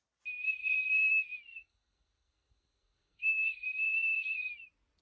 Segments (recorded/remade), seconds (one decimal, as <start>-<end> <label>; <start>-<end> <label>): 0.0-0.6 recorded; 0.6-1.1 remade; 1.1-1.5 recorded; 1.5-4.5 remade; 4.5-5.0 recorded